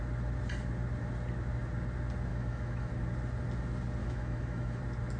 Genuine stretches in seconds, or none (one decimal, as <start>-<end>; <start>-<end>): 0.0-2.3; 2.9-4.0; 4.8-5.2

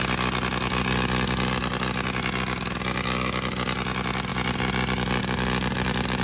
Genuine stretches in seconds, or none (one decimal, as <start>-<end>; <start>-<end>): 0.0-6.2

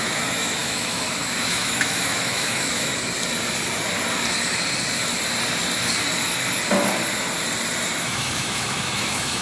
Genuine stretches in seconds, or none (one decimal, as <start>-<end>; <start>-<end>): 2.9-8.0

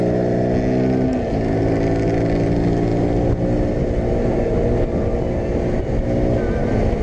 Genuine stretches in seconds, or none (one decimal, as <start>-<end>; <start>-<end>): 0.0-7.0

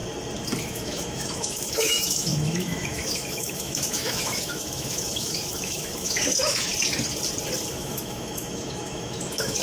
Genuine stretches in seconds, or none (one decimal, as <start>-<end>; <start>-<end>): 0.0-0.6; 6.7-7.7

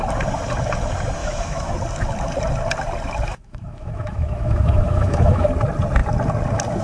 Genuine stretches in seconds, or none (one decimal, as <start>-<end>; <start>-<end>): 0.0-1.2; 1.7-3.3; 5.5-6.8

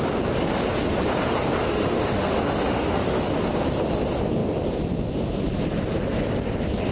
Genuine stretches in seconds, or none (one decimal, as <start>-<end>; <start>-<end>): 0.0-1.6; 3.2-6.9

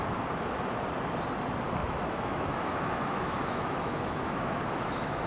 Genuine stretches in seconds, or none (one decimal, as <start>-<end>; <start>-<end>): 0.0-1.8